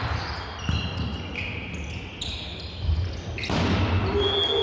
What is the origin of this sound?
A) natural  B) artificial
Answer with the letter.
A